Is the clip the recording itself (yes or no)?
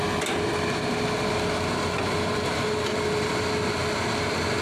yes